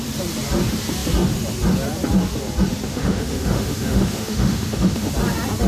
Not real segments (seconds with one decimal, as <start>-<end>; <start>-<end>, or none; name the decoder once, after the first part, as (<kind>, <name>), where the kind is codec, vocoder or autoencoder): 2.9-5.1 (autoencoder, DAC-VAE)

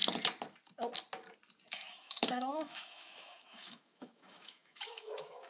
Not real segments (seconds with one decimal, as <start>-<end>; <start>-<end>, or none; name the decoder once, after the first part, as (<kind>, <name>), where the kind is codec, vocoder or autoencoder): 1.7-5.5 (autoencoder, DAC-VAE)

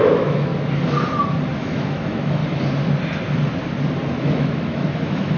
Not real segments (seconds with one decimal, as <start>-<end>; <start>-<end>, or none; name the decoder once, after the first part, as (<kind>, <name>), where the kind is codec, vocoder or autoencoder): 0.0-0.5 (autoencoder, DAC-VAE); 1.6-2.4; 4.2-5.4

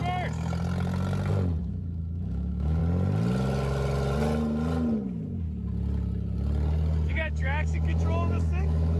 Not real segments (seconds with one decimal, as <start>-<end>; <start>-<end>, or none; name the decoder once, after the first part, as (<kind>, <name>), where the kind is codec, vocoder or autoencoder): 1.6-2.8 (autoencoder, DAC-VAE); 7.1-9.0